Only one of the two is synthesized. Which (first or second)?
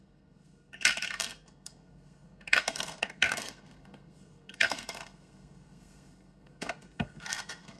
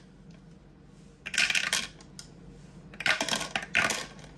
first